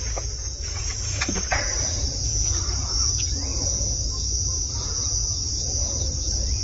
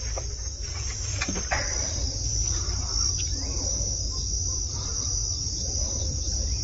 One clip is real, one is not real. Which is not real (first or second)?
first